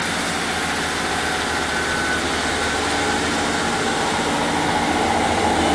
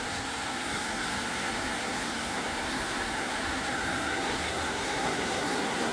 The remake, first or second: second